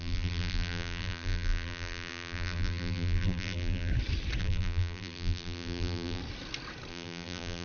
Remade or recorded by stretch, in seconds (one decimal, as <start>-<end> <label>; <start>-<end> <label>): 0.0-3.9 remade; 3.9-4.4 recorded; 4.4-6.2 remade; 6.2-6.9 recorded; 6.9-7.6 remade